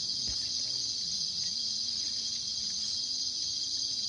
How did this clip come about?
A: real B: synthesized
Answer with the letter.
A